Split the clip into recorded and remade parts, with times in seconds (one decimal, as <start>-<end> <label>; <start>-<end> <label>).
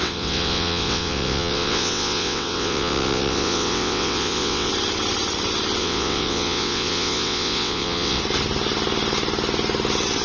0.0-4.7 remade; 4.7-5.8 recorded; 5.8-8.2 remade; 8.2-10.2 recorded